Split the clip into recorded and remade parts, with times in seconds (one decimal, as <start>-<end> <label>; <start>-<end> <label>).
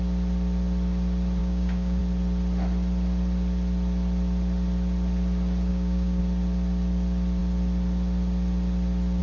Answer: 0.0-1.4 recorded; 1.4-2.0 remade; 2.0-5.7 recorded; 5.7-6.2 remade; 6.2-9.2 recorded